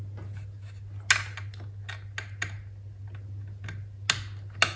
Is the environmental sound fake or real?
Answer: real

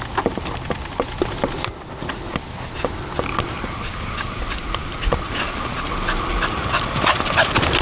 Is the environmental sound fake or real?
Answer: real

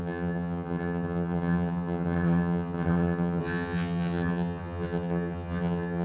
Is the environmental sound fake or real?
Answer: fake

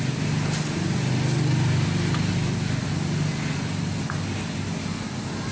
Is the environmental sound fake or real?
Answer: real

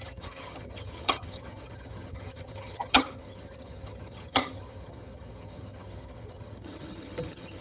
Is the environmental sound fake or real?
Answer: fake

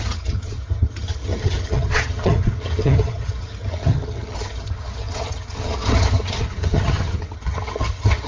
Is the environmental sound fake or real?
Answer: fake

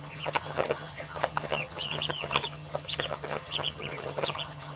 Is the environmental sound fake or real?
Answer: fake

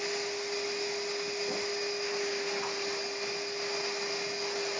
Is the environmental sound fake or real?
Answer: real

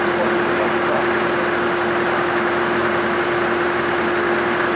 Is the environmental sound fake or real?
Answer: real